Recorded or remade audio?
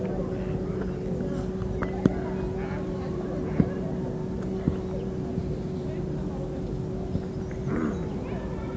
recorded